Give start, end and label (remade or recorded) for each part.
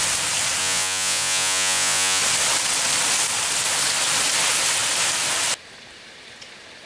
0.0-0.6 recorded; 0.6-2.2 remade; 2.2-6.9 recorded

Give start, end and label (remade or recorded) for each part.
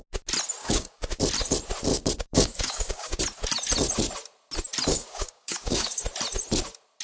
0.0-0.6 recorded; 0.6-1.2 remade; 1.2-1.9 recorded; 1.9-3.2 remade; 3.2-4.9 recorded; 4.9-6.0 remade; 6.0-7.0 recorded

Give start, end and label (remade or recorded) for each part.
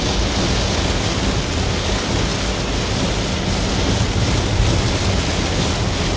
0.0-6.2 recorded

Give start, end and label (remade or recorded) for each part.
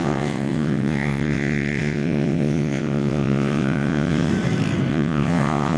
0.0-4.3 remade; 4.3-4.9 recorded; 4.9-5.8 remade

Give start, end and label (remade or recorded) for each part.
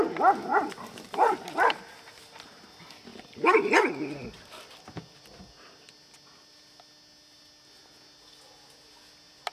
0.0-9.5 recorded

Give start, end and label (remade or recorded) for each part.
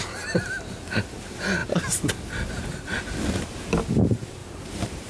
0.0-4.4 recorded; 4.4-5.1 remade